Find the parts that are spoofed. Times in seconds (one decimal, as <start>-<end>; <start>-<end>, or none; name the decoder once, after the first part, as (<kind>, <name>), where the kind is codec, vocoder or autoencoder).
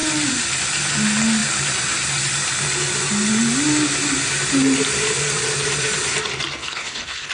6.6-7.3 (codec, HILCodec)